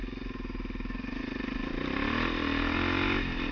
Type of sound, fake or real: real